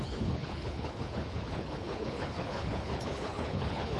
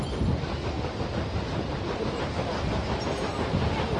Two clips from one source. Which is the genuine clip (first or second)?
second